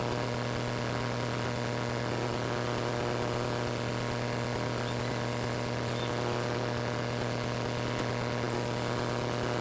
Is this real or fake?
real